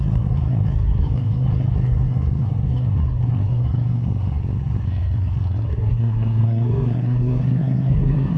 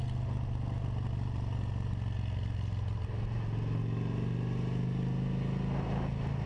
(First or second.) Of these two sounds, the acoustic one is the second